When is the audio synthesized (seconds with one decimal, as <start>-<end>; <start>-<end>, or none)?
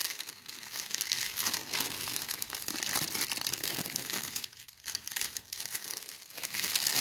0.0-2.7; 3.5-7.0